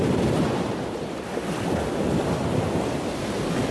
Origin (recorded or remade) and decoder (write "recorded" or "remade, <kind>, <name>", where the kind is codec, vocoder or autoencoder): recorded